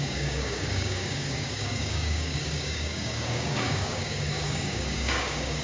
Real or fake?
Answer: fake